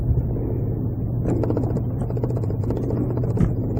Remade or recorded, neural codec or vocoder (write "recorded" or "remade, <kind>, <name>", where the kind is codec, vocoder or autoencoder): recorded